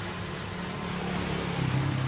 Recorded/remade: recorded